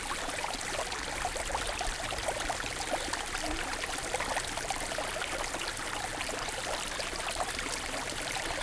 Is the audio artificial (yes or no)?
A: no